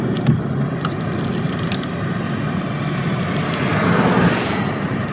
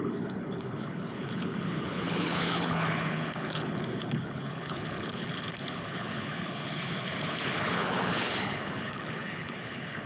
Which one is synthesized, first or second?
second